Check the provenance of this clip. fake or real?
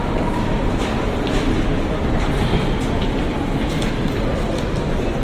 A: real